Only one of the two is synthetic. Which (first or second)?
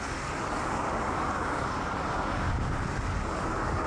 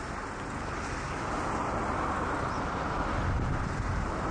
first